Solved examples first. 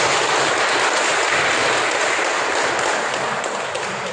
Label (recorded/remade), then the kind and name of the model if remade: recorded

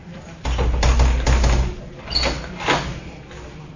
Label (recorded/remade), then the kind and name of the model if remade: recorded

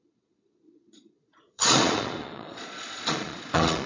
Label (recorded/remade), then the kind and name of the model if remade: remade, vocoder, Vocos